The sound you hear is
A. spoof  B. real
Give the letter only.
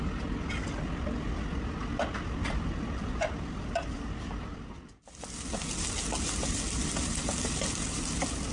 B